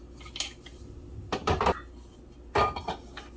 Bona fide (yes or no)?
yes